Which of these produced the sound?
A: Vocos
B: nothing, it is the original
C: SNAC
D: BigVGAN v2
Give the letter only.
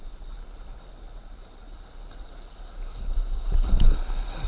B